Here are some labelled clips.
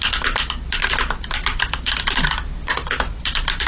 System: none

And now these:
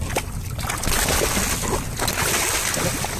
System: none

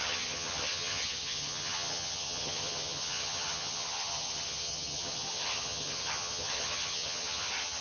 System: vocoder, HiFi-GAN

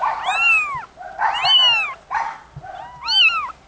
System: none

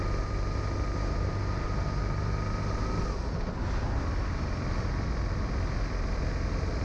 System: none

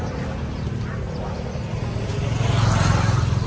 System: none